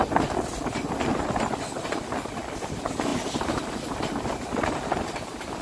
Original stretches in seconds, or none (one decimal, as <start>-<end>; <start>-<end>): 0.0-1.1; 1.8-5.6